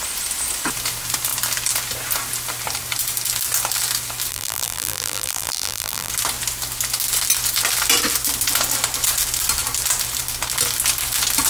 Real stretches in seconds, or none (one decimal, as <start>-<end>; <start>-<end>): 0.0-4.3; 6.1-11.5